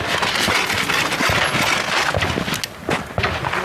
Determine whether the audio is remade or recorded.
recorded